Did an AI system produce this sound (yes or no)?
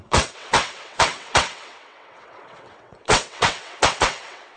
yes